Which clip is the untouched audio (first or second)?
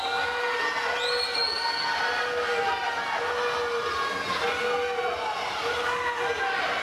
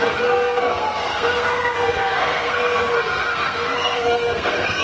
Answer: first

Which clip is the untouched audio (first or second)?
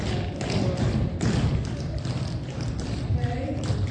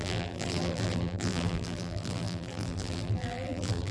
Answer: first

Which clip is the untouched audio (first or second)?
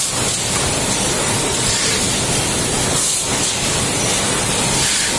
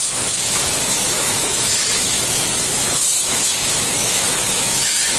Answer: first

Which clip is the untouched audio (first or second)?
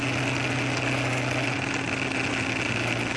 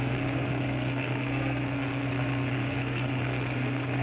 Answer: first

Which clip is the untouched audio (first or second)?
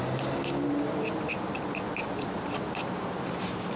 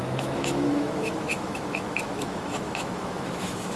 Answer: first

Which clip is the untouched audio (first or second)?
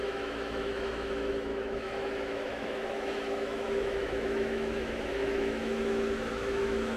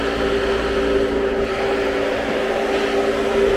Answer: second